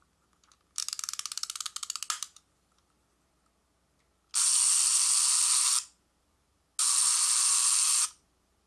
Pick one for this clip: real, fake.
real